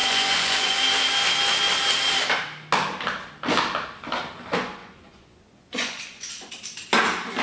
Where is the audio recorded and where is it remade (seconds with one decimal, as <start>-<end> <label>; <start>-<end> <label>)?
0.0-0.8 remade; 0.8-4.8 recorded; 4.8-6.5 remade; 6.5-7.4 recorded